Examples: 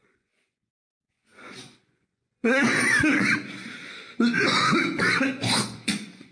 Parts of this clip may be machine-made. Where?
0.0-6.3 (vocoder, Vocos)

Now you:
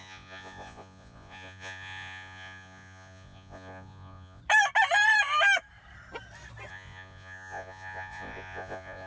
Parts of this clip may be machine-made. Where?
0.0-4.4 (vocoder, Vocos); 6.7-9.1

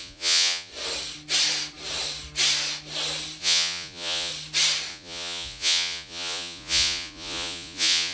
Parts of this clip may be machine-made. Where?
0.0-0.7 (vocoder, Vocos); 3.4-4.3; 4.9-8.1

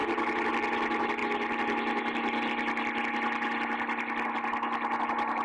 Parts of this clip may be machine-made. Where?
none

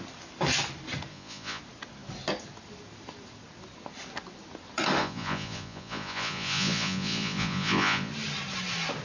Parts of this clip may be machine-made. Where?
1.1-1.6 (vocoder, Vocos); 5.0-8.1

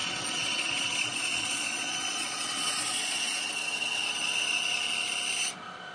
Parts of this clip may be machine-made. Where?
0.0-3.5 (vocoder, Vocos)

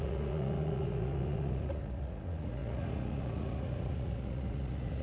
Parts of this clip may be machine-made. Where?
0.0-5.0 (vocoder, Vocos)

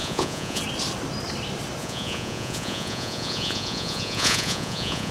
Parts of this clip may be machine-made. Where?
0.0-0.6 (vocoder, Vocos); 1.8-5.1